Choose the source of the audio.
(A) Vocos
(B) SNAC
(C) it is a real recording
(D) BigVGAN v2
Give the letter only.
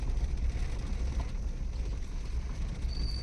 C